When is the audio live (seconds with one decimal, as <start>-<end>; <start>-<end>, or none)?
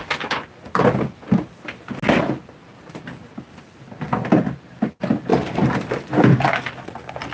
0.0-5.3; 6.1-7.3